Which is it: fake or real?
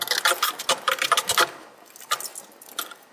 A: real